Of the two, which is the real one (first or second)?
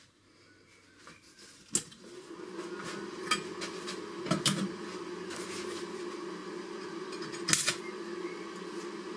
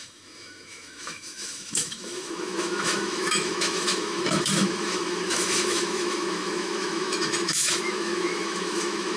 first